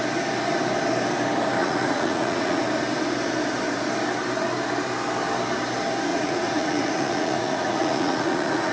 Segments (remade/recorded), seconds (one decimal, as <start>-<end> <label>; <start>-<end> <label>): 0.0-1.6 recorded; 1.6-2.6 remade; 2.6-6.1 recorded; 6.1-8.7 remade